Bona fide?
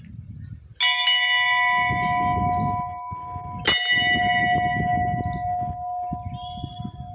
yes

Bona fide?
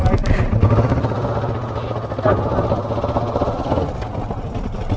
yes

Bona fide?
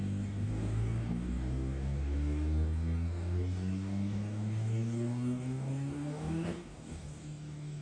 no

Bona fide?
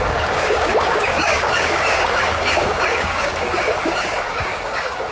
no